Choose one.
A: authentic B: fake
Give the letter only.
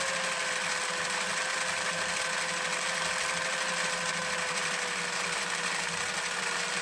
A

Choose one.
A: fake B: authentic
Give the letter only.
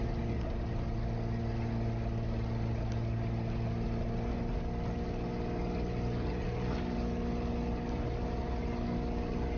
B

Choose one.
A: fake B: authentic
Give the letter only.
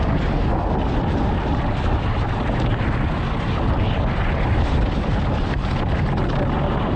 B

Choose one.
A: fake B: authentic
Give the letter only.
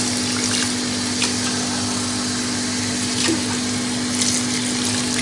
B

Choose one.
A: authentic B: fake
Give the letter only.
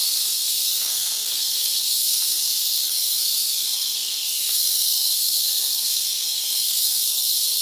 B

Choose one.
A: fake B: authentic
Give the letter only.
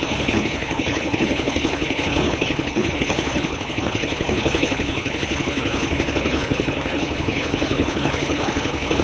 A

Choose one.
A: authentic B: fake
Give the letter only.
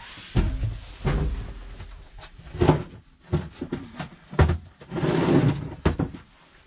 A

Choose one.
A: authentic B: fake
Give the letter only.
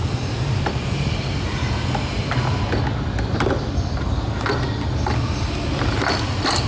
A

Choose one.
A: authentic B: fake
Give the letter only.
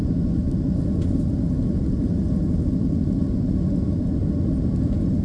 A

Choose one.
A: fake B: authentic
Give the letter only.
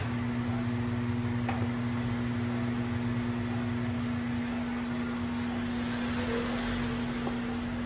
B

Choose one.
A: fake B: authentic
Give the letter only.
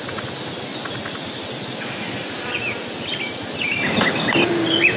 B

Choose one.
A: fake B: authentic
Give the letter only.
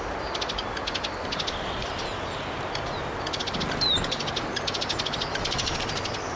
B